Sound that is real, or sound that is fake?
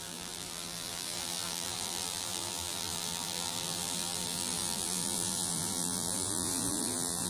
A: fake